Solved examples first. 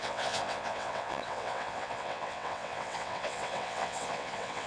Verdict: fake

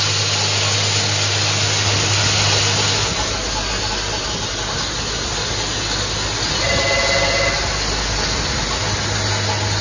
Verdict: real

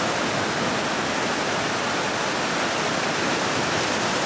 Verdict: real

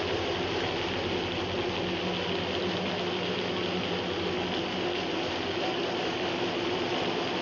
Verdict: real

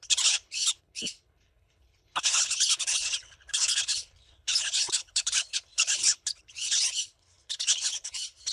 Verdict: fake